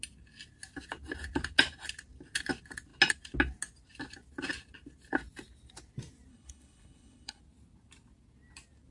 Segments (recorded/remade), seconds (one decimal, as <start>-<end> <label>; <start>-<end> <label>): 0.0-6.3 recorded; 6.3-7.4 remade; 7.4-8.9 recorded